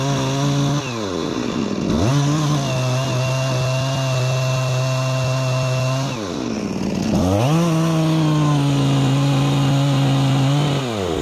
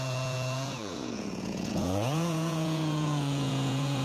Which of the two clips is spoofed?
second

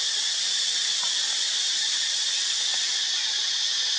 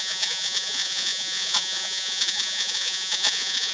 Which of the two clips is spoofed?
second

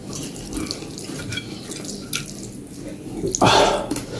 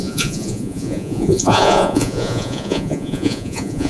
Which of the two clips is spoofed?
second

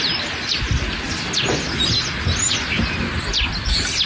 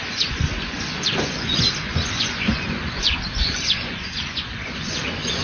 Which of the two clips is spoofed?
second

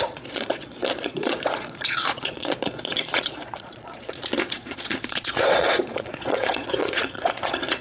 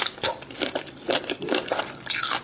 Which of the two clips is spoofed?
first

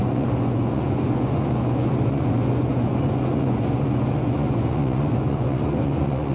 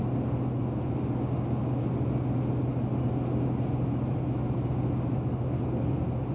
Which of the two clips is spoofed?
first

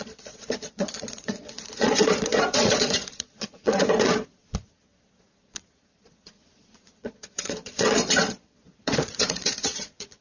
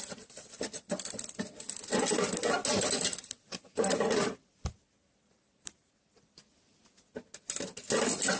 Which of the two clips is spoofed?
first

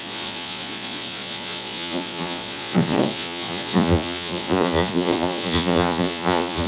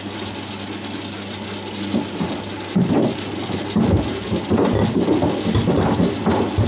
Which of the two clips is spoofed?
first